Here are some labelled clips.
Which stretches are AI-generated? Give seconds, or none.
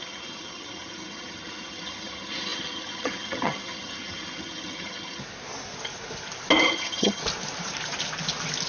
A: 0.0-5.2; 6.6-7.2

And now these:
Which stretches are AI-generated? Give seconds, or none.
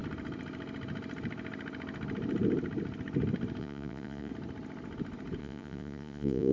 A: 3.6-4.3; 5.4-6.5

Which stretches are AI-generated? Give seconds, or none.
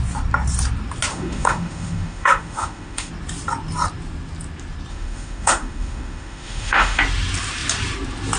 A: 1.1-3.1; 4.9-7.0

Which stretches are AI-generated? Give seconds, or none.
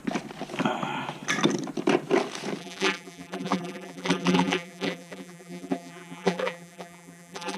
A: 2.6-7.6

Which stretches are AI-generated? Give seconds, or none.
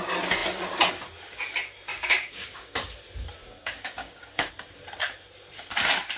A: 1.9-2.7; 3.4-4.5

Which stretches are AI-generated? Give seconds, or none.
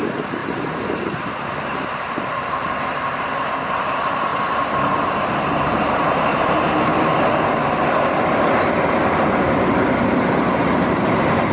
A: 0.0-0.4; 1.0-4.3; 5.0-6.9; 9.8-11.5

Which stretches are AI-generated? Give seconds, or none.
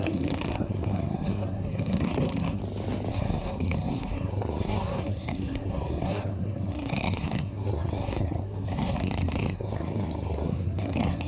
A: 0.0-2.6; 3.1-11.3